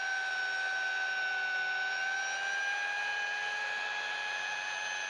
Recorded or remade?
recorded